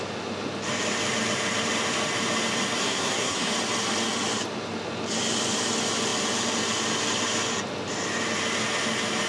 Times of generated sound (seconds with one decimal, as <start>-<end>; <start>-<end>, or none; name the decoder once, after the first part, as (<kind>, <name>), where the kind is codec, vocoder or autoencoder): 2.8-3.5 (codec, SNAC)